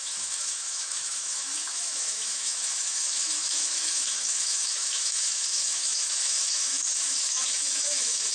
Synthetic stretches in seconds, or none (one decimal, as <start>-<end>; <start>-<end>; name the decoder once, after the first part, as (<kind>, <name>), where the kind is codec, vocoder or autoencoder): 0.0-8.3 (autoencoder, DAC-VAE)